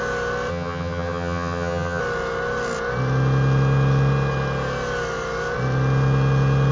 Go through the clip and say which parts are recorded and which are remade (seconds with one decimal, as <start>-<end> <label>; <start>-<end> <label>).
0.0-0.5 recorded; 0.5-2.0 remade; 2.0-6.7 recorded